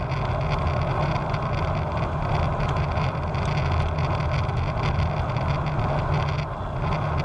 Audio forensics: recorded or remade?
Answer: recorded